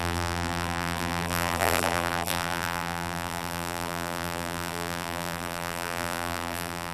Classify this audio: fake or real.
fake